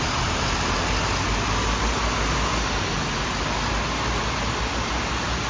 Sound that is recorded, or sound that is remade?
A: recorded